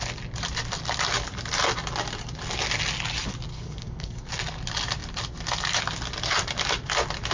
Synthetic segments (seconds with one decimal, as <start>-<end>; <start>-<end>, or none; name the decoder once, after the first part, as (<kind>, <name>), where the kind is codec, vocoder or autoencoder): 3.5-4.3 (codec, SNAC)